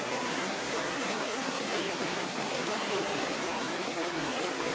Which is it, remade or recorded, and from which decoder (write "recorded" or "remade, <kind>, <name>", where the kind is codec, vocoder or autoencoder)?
remade, codec, SNAC